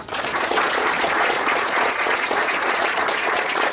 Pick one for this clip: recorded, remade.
remade